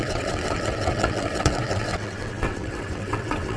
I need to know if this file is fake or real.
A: fake